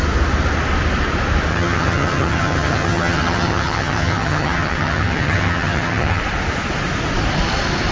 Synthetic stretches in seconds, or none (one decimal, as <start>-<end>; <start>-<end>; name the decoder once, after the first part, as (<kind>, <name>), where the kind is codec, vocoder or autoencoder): 1.5-6.2 (vocoder, HiFi-GAN)